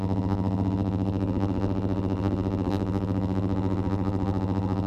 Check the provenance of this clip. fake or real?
fake